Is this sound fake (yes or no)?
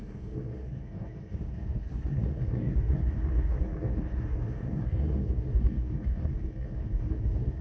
yes